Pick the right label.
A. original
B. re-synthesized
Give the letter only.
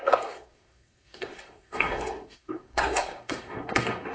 B